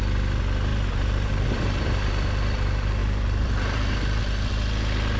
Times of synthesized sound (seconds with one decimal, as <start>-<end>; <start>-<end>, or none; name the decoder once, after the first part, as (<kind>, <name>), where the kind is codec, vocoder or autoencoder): 0.7-2.1 (vocoder, BigVGAN v2); 3.0-4.2